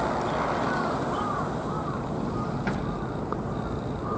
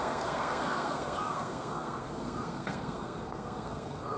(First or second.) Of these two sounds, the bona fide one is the first